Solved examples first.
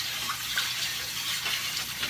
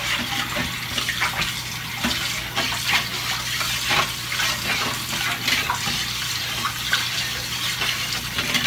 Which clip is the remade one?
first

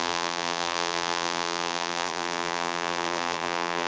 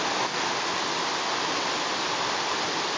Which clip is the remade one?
first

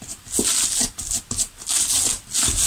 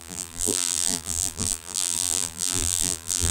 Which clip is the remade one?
second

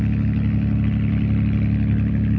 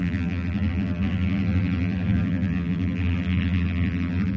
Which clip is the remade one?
second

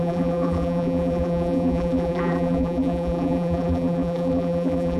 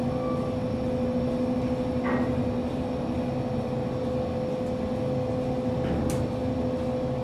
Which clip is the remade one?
first